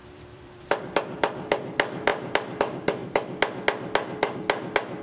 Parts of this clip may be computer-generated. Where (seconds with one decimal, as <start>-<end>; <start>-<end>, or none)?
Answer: 0.0-0.6; 2.1-2.6